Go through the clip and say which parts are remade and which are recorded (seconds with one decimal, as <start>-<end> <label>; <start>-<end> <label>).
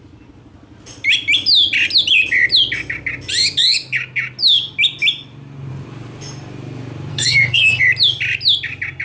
0.0-7.1 recorded; 7.1-7.8 remade; 7.8-9.0 recorded